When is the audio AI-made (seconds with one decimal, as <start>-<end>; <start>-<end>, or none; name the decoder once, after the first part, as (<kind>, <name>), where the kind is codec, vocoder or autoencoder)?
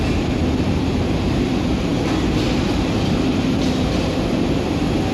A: none